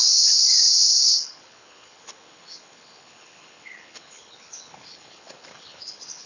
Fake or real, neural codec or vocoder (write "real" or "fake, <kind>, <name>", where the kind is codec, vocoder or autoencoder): fake, codec, HILCodec